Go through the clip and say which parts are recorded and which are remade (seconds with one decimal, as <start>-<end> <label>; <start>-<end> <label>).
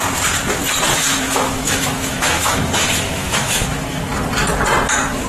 0.0-0.9 recorded; 0.9-4.1 remade; 4.1-5.3 recorded